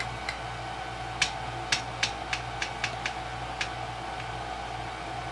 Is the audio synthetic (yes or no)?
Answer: no